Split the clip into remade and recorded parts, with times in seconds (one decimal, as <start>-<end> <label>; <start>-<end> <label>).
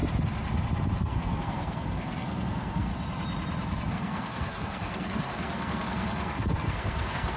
0.0-1.0 recorded; 1.0-2.9 remade; 2.9-3.9 recorded; 3.9-7.4 remade